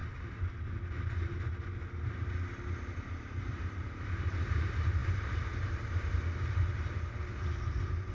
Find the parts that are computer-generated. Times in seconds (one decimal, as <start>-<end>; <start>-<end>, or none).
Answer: 3.5-8.1